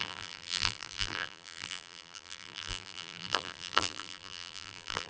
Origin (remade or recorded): remade